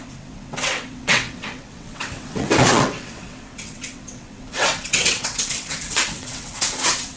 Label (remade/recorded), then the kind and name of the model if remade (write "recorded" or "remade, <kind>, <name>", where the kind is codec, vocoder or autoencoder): remade, vocoder, WaveNeXt